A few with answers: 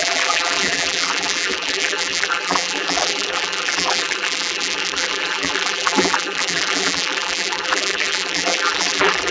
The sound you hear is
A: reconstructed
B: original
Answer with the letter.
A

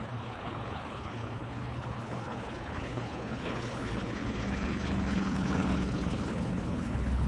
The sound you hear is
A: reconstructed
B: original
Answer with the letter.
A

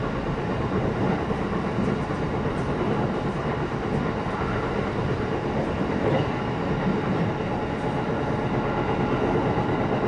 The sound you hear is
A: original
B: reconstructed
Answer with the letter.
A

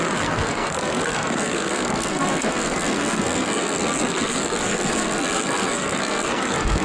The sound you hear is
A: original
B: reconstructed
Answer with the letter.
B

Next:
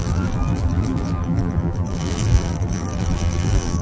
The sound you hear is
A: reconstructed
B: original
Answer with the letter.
A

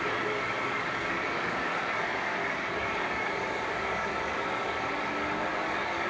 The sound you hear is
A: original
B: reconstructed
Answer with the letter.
B